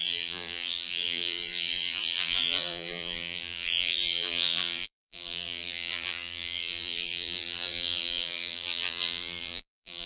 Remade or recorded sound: remade